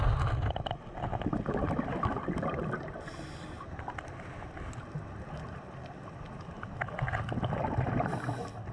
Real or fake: real